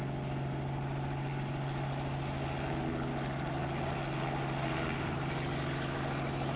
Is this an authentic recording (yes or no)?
yes